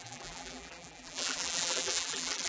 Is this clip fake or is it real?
fake